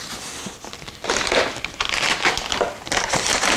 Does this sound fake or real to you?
real